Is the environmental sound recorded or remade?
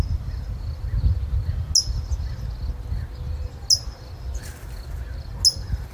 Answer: recorded